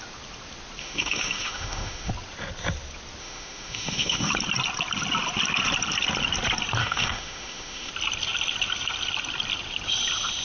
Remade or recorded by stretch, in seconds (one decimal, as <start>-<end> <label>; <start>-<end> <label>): 0.0-0.8 recorded; 0.8-2.1 remade; 2.1-3.2 recorded; 3.2-4.3 remade; 4.3-6.8 recorded; 6.8-7.9 remade; 7.9-10.4 recorded